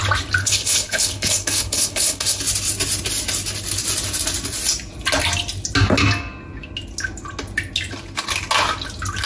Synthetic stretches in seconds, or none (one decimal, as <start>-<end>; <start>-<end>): 0.4-2.4